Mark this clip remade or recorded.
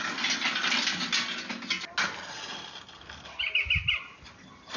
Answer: recorded